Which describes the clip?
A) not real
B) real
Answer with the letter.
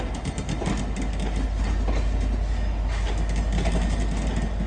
B